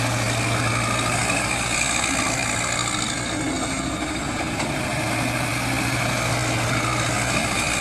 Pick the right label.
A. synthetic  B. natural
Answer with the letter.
B